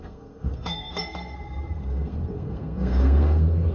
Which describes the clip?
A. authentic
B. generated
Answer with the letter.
B